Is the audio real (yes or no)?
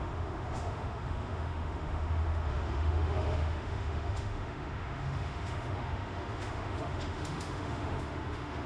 no